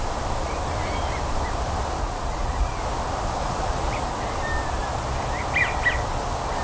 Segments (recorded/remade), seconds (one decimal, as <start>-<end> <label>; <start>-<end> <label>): 0.0-2.0 recorded; 2.0-2.8 remade; 2.8-3.4 recorded; 3.4-4.0 remade; 4.0-6.6 recorded